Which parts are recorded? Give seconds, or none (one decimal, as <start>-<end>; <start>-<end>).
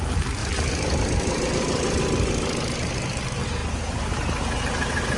0.0-5.2